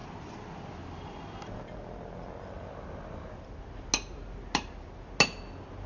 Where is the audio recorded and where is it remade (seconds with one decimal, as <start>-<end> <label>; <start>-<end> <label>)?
0.0-5.9 recorded